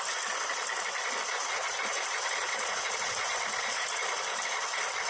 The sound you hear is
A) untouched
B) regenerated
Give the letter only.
A